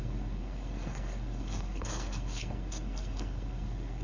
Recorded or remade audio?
remade